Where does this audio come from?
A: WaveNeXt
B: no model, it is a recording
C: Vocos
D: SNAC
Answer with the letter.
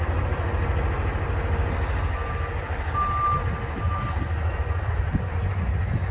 B